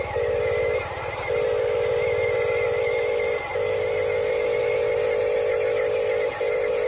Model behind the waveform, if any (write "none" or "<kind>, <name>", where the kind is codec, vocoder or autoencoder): none